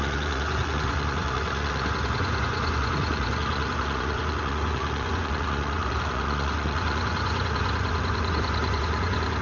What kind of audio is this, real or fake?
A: fake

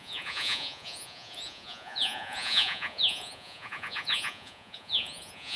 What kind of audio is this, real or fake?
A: fake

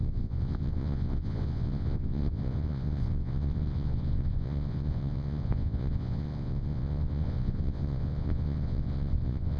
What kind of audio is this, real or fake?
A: fake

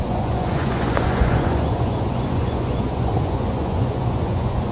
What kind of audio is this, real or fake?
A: fake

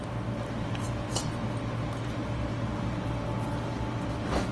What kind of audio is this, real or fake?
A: real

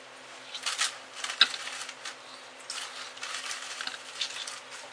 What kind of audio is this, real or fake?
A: real